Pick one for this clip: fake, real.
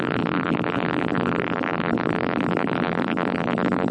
fake